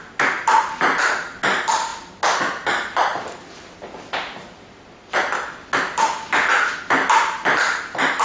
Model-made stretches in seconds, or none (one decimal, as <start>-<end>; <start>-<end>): none